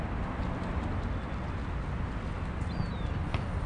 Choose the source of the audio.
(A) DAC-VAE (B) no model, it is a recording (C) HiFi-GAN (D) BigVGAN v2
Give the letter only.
B